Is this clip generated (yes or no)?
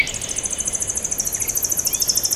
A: no